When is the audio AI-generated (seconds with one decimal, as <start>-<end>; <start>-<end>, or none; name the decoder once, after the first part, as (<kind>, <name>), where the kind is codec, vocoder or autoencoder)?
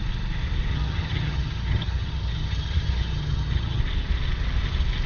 0.7-3.8 (vocoder, HiFi-GAN)